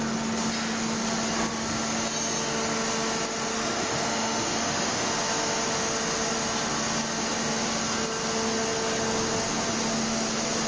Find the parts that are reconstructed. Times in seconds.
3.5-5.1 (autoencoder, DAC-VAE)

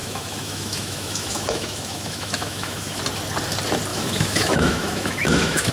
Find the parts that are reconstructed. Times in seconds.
0.0-3.0 (autoencoder, DAC-VAE); 3.9-5.7